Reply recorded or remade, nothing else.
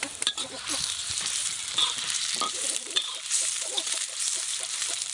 remade